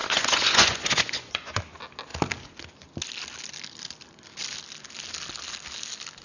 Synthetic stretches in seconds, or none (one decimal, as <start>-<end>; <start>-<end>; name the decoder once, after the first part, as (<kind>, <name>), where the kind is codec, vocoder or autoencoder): 0.0-1.6 (vocoder, Vocos)